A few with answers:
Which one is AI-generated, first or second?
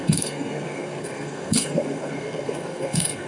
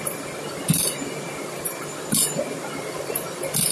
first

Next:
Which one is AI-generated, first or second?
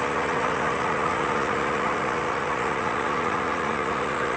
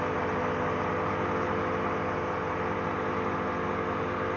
first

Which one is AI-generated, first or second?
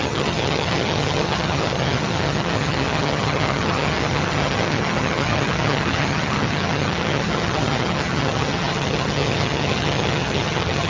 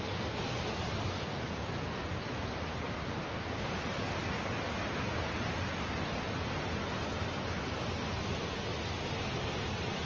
first